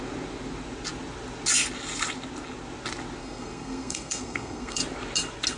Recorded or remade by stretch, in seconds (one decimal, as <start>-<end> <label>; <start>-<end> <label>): 0.0-3.2 recorded; 3.2-4.8 remade; 4.8-5.6 recorded